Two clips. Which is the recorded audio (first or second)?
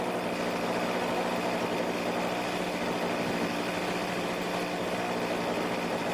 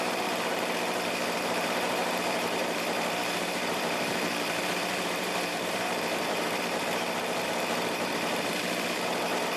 first